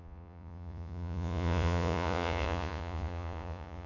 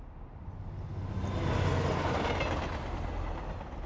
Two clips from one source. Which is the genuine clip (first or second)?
second